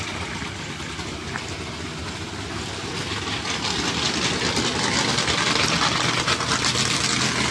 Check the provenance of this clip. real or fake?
real